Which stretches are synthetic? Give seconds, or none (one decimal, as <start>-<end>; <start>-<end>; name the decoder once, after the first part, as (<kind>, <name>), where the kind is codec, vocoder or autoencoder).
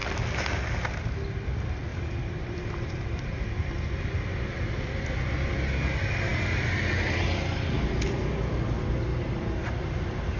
1.9-3.9 (vocoder, BigVGAN v2); 9.1-10.4